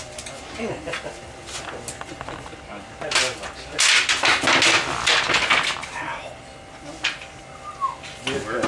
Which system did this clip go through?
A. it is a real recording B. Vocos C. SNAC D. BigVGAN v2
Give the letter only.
A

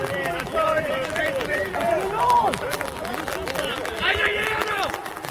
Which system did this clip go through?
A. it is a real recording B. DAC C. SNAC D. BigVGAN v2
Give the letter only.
D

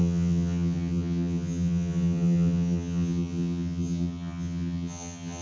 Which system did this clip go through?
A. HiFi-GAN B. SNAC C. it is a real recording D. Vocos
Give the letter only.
A